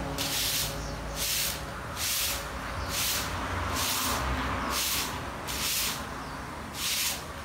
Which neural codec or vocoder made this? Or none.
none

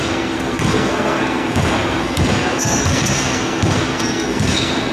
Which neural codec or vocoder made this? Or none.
codec, SNAC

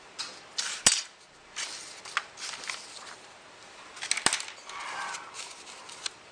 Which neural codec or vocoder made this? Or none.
none